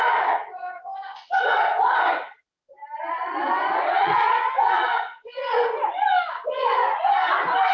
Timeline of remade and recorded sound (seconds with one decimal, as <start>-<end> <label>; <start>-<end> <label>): 0.0-2.8 remade; 2.8-3.4 recorded; 3.4-5.7 remade; 5.7-6.3 recorded; 6.3-6.8 remade; 6.8-7.7 recorded